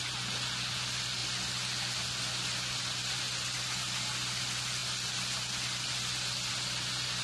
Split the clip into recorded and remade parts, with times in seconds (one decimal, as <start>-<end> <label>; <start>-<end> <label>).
0.0-7.2 recorded